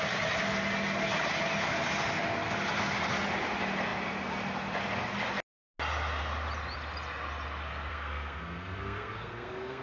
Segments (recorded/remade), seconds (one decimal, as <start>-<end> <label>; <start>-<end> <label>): 0.0-7.9 recorded; 7.9-9.8 remade